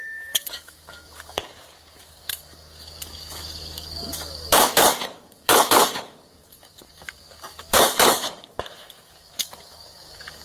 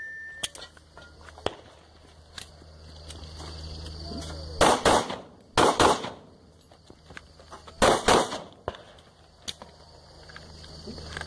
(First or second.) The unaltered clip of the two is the second